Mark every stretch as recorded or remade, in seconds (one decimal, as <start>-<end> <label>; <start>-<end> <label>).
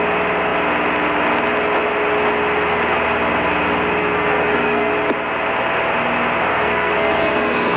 0.0-4.0 recorded; 4.0-4.9 remade; 4.9-6.5 recorded; 6.5-7.8 remade